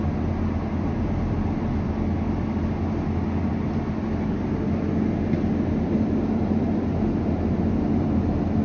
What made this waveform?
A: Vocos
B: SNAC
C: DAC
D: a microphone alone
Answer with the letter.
D